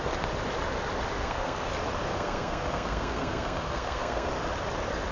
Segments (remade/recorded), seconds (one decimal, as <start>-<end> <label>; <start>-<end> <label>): 0.0-1.2 recorded; 1.2-1.7 remade; 1.7-2.1 recorded; 2.1-4.3 remade; 4.3-5.1 recorded